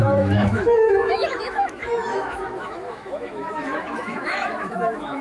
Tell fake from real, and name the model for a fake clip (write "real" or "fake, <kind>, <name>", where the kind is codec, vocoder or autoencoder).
fake, autoencoder, DAC-VAE